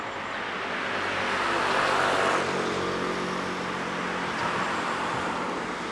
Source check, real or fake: real